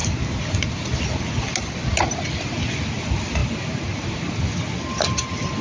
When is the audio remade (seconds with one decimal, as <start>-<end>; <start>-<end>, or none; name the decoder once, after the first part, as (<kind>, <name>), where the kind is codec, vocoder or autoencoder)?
none